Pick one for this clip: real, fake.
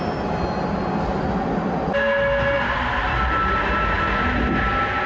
real